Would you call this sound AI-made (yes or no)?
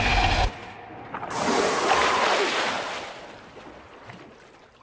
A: no